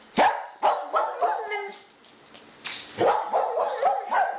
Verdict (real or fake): real